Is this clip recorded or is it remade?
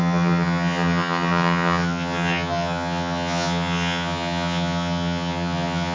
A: remade